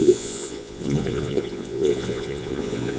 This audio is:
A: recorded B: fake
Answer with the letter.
B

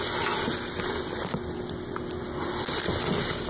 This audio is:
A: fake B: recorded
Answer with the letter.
B